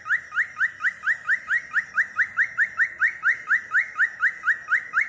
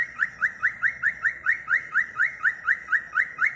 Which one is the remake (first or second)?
second